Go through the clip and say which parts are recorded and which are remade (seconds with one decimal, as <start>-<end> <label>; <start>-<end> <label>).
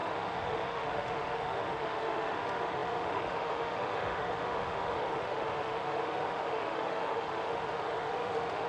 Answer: 0.0-8.7 remade